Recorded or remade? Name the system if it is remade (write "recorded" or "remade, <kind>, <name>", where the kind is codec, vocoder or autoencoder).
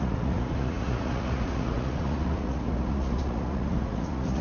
remade, vocoder, Vocos